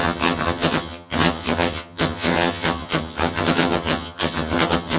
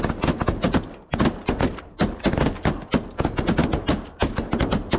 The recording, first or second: second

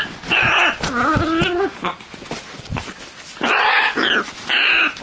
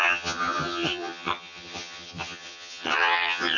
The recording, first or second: first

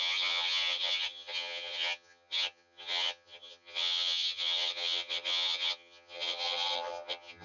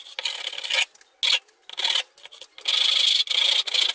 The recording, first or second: second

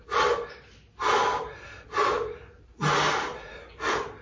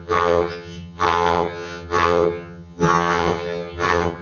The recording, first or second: first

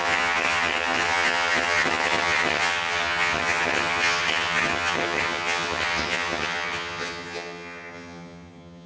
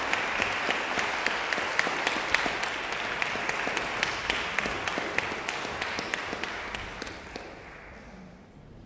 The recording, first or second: second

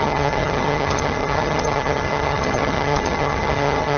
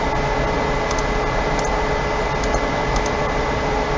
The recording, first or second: second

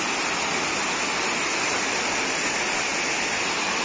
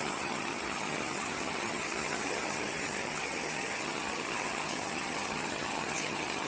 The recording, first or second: first